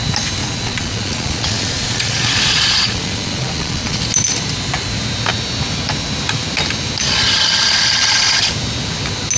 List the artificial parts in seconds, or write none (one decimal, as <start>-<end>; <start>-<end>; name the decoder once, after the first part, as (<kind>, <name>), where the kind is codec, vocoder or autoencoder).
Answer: 0.4-4.0 (vocoder, Vocos)